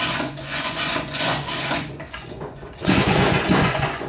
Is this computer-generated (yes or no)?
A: yes